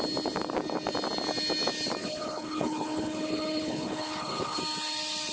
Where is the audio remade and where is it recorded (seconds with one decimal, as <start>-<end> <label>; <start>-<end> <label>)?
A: 0.0-2.0 recorded; 2.0-4.6 remade; 4.6-5.3 recorded